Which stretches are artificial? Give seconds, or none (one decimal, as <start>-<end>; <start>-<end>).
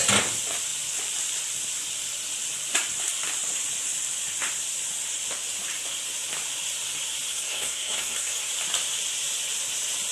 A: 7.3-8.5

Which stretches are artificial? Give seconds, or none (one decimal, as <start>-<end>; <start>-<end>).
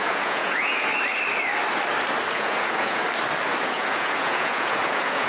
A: 0.0-0.9; 2.3-3.0; 3.6-5.3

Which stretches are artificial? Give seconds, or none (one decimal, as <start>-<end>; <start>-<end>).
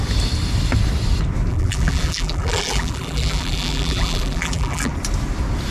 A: 1.5-4.9